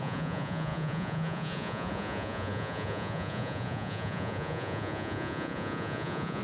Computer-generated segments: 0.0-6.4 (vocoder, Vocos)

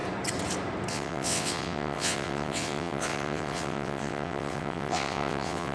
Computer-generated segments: 0.9-5.7 (vocoder, WaveNeXt)

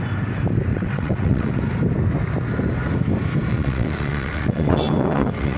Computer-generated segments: 0.7-1.6 (vocoder, WaveNeXt); 3.5-5.6

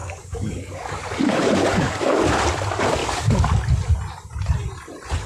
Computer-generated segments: 0.0-2.4 (codec, DAC); 3.0-3.6